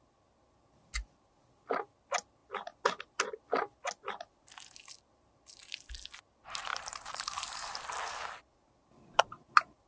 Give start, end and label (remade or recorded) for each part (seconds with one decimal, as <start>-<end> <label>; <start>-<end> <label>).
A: 0.0-6.7 recorded; 6.7-7.8 remade; 7.8-9.9 recorded